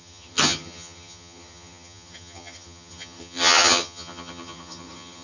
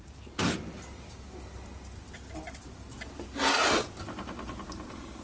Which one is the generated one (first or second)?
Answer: first